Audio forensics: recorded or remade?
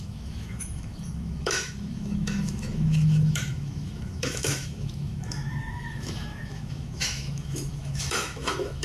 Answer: remade